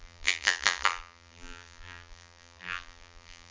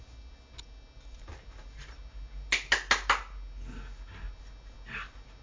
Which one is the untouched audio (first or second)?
second